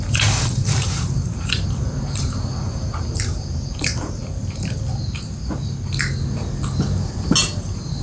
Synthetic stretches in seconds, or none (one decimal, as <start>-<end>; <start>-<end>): 0.0-4.2; 7.6-8.0